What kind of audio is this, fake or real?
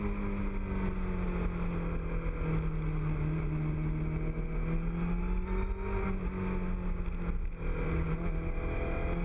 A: real